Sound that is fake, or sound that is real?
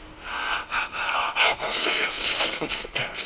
fake